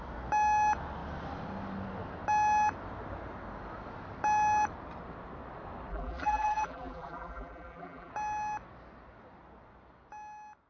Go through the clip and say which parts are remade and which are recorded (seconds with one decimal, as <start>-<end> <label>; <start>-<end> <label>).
0.0-5.9 recorded; 5.9-8.1 remade; 8.1-10.7 recorded

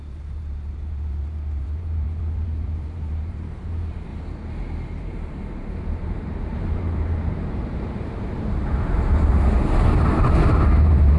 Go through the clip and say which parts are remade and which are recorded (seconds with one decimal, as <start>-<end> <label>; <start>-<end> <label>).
0.0-4.1 remade; 4.1-4.9 recorded; 4.9-11.2 remade

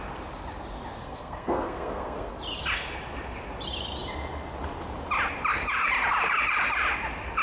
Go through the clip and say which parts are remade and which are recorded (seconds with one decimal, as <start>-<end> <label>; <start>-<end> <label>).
0.0-1.0 recorded; 1.0-2.4 remade; 2.4-7.4 recorded

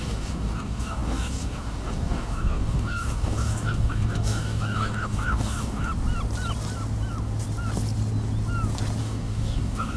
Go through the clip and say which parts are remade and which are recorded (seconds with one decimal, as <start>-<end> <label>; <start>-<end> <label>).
0.0-5.9 remade; 5.9-9.0 recorded; 9.0-10.0 remade

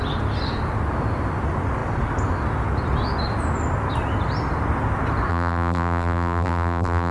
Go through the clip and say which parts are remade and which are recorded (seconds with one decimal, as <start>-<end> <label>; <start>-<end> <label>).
0.0-5.3 recorded; 5.3-7.1 remade

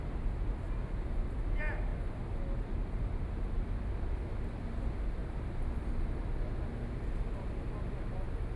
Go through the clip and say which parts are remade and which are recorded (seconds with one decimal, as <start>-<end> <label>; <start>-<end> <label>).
0.0-8.6 recorded